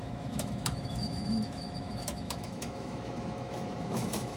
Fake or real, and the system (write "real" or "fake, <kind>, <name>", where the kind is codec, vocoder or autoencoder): fake, autoencoder, DAC-VAE